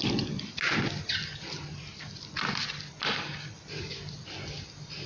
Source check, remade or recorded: recorded